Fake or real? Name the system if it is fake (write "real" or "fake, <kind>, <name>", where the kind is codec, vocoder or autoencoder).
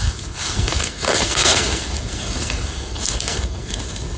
fake, codec, SNAC